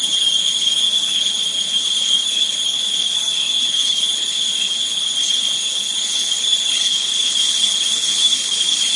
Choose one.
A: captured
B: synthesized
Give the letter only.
B